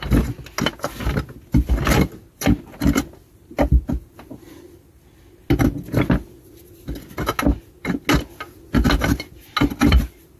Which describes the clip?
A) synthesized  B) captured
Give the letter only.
B